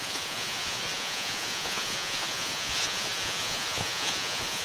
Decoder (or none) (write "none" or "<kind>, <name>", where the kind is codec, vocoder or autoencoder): vocoder, Vocos